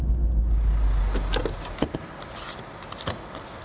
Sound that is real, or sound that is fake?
real